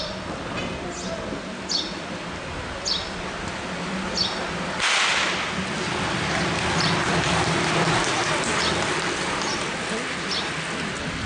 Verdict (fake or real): real